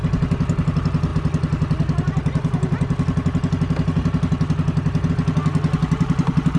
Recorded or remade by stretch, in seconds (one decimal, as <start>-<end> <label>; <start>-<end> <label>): 0.0-6.6 recorded